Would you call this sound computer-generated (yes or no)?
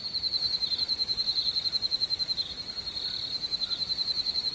no